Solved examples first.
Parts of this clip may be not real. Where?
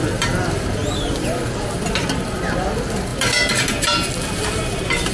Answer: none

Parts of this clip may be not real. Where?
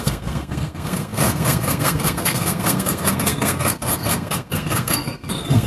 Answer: 0.0-5.7 (codec, SNAC)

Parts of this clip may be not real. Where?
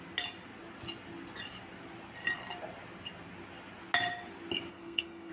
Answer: 4.7-5.3 (codec, SNAC)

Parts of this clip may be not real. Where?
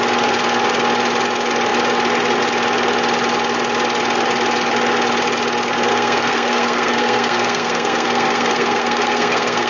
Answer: 5.9-9.7 (codec, SNAC)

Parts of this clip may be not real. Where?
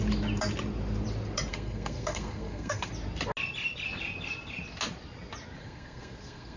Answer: 1.5-2.9 (codec, SNAC); 5.6-6.6